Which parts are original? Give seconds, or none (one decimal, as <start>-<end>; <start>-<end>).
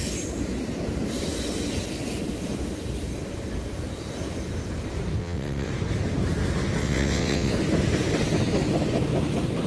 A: 0.0-5.2; 5.7-6.8; 7.5-9.7